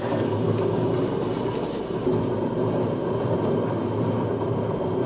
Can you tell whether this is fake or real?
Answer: real